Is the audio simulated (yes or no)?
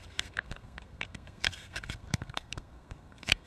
yes